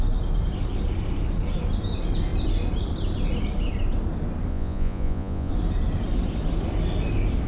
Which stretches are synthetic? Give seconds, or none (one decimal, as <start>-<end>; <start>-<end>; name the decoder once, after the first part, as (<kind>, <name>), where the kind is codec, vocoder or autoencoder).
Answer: 4.5-5.5 (vocoder, Vocos)